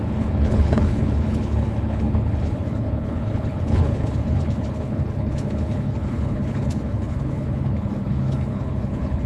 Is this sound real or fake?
fake